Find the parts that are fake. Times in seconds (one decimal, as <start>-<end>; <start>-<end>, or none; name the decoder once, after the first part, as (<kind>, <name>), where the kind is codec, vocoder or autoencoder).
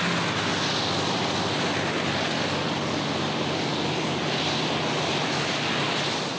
none